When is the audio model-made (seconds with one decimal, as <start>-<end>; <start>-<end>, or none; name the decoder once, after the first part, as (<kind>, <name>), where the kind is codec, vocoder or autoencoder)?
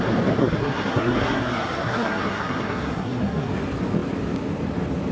0.4-3.5 (codec, SNAC)